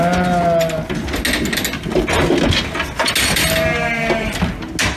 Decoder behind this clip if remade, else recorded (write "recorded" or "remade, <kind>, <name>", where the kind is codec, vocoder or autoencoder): recorded